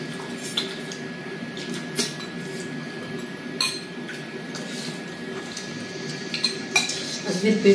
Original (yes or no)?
yes